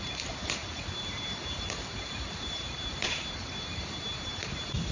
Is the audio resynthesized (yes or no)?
yes